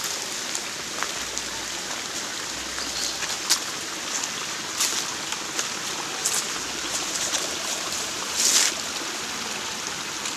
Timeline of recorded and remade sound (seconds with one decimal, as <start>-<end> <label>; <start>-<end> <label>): 0.0-6.2 recorded; 6.2-8.3 remade; 8.3-10.4 recorded

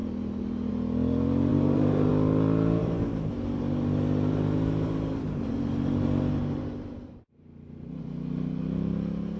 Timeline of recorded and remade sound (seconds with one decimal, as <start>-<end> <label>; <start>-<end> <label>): 0.0-1.5 recorded; 1.5-2.1 remade; 2.1-2.8 recorded; 2.8-8.0 remade; 8.0-9.4 recorded

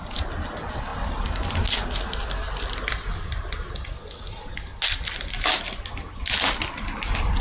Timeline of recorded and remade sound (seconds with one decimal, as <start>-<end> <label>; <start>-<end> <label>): 0.0-7.4 recorded

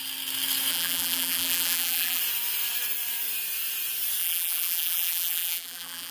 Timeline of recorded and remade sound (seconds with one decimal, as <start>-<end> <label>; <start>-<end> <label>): 0.0-0.7 recorded; 0.7-2.2 remade; 2.2-4.2 recorded; 4.2-6.1 remade

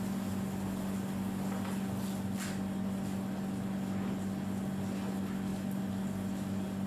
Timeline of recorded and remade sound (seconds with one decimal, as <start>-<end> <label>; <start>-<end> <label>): 0.0-6.9 recorded

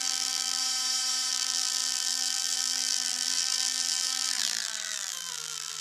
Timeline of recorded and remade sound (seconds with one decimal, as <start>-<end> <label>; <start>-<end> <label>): 0.0-0.6 remade; 0.6-1.3 recorded; 1.3-5.8 remade